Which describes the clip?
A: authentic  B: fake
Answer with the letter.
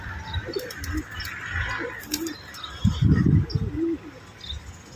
A